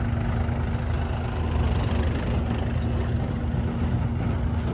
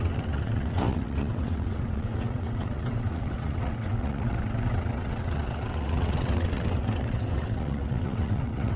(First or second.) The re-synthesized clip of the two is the second